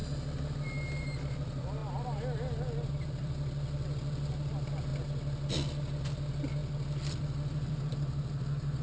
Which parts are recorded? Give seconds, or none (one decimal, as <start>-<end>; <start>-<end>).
0.0-1.0; 1.8-3.1; 4.9-6.0